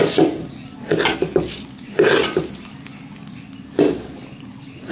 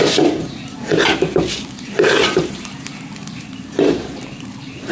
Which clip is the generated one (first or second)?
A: second